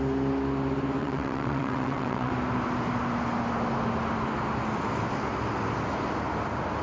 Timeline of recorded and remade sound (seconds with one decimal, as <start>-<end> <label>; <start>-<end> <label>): 0.0-1.0 recorded; 1.0-2.3 remade; 2.3-6.8 recorded